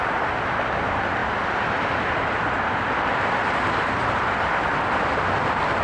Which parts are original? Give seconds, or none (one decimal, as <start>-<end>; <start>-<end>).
0.0-5.8